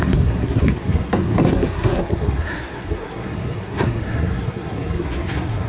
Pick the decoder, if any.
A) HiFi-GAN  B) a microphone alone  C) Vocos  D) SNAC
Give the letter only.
D